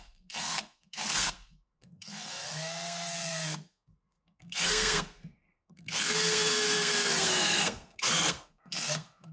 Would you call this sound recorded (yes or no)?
no